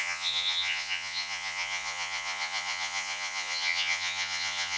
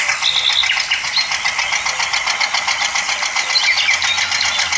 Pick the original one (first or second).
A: second